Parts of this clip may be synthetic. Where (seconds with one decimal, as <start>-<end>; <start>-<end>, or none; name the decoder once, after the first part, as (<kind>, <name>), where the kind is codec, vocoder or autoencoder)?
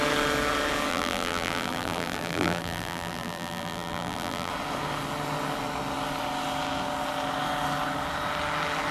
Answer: 0.9-4.5 (vocoder, BigVGAN v2)